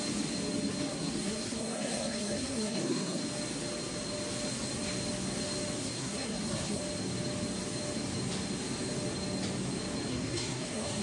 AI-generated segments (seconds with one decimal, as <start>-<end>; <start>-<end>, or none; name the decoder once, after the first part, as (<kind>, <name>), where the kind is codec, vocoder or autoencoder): 0.9-3.2 (codec, SNAC); 5.8-6.8; 10.1-11.0